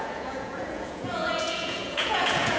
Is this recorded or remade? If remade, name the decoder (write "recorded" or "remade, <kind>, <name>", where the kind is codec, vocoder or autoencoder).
remade, vocoder, Vocos